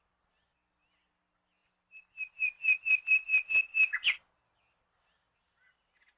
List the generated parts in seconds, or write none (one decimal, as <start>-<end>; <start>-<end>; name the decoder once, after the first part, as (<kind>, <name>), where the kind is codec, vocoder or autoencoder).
none